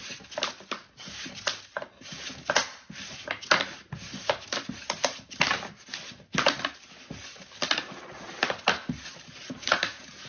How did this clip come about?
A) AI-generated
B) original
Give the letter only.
B